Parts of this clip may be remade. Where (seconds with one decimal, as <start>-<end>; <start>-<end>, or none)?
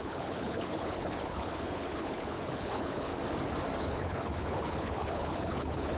0.0-3.1; 3.8-6.0